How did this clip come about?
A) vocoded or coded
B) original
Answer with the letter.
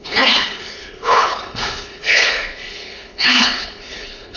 A